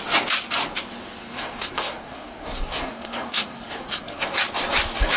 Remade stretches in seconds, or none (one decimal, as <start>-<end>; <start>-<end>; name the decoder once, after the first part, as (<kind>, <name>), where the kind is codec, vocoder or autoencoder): 1.2-4.3 (codec, SNAC)